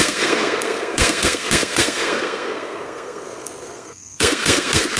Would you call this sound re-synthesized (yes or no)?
yes